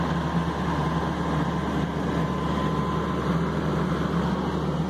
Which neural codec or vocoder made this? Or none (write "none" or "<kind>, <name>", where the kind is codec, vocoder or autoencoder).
none